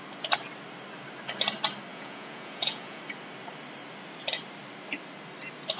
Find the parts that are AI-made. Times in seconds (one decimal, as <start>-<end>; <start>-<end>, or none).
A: 1.9-3.0